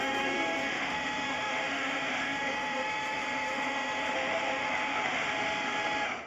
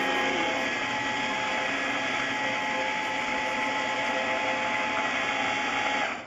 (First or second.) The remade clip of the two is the first